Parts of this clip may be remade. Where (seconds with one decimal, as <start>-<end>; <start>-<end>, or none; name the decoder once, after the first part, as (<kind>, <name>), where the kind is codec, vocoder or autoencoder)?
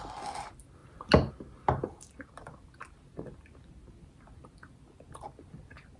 none